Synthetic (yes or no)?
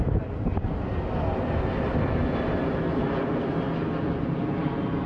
no